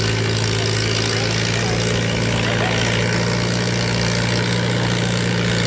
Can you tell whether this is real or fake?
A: real